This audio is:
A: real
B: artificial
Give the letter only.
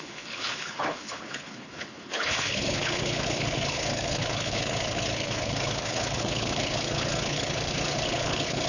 B